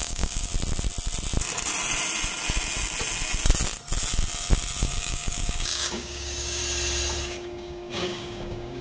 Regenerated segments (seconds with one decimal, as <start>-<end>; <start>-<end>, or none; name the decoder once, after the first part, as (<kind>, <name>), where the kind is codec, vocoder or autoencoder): 0.0-0.5 (codec, DAC); 4.8-6.6; 7.2-8.8